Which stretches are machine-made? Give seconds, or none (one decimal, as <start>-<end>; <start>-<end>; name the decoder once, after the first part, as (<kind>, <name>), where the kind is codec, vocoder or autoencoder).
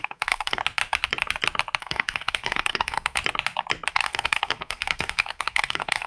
0.0-0.6 (codec, SNAC); 1.8-3.2; 3.9-6.1